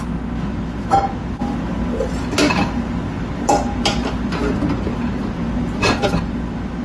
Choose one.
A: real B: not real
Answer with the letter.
A